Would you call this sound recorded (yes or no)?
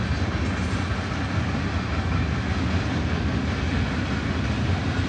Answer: yes